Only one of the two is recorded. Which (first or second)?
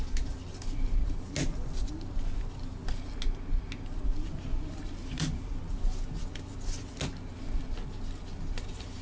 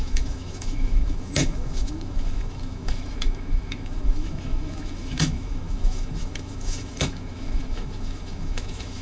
first